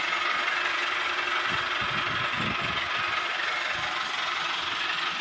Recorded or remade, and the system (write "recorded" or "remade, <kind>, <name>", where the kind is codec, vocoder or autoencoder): recorded